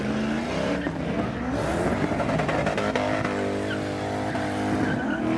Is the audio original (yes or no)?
yes